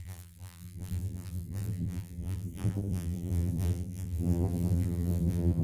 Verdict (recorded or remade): remade